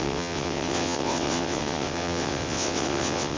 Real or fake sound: fake